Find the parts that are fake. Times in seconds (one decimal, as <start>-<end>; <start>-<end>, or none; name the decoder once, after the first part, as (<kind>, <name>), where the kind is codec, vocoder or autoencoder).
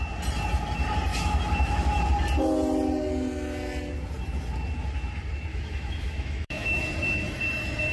1.1-2.0 (autoencoder, DAC-VAE); 5.5-6.8